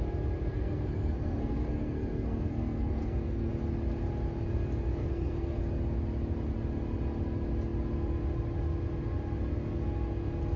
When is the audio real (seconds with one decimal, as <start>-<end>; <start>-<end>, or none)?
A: 0.0-0.5; 3.5-5.0; 5.6-10.6